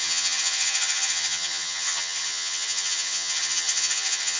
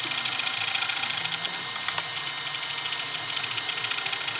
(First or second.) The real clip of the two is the second